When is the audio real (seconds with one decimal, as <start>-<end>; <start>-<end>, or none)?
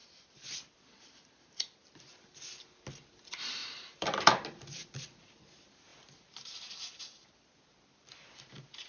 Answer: 2.2-3.6; 4.3-8.9